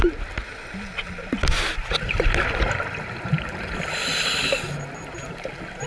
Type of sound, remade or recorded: recorded